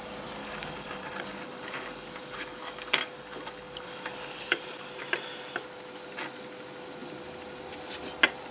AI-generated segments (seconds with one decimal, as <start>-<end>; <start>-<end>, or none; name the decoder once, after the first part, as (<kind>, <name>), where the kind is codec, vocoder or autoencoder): 0.4-4.9 (codec, DAC)